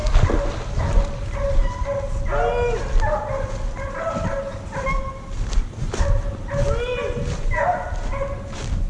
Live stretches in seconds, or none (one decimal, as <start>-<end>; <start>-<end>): 0.0-8.9